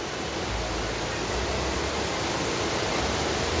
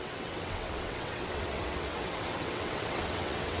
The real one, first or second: first